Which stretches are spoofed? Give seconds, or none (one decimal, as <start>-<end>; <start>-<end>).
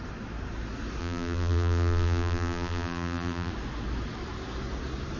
1.0-3.5